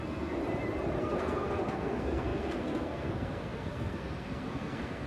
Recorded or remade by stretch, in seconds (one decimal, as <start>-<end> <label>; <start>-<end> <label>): 0.0-0.4 remade; 0.4-1.0 recorded; 1.0-5.1 remade